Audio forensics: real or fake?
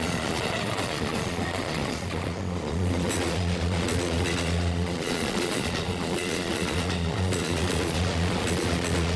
fake